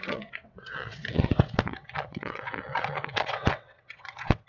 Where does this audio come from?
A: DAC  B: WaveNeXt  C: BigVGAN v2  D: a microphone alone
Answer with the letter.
B